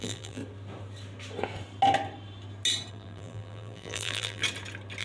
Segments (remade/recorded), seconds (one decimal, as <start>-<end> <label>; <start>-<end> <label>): 0.0-0.4 remade; 0.4-2.9 recorded; 2.9-4.4 remade; 4.4-5.0 recorded